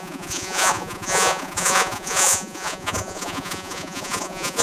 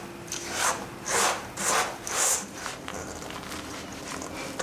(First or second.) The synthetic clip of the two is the first